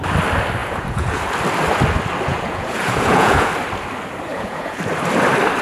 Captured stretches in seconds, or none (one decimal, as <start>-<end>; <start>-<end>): 0.0-0.6; 1.2-2.3; 3.5-4.3; 4.8-5.6